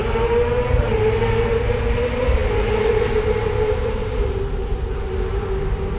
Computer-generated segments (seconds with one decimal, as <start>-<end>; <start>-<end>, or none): none

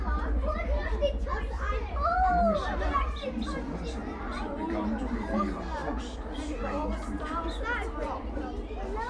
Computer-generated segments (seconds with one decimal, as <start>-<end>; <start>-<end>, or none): none

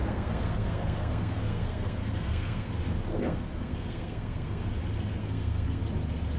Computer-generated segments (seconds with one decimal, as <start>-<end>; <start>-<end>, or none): 0.0-2.7; 3.1-4.7; 5.2-5.8

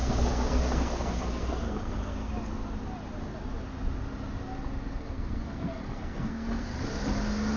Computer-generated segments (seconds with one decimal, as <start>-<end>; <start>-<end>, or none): 0.0-2.3; 4.9-6.7